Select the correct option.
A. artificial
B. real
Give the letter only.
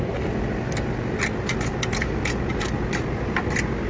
B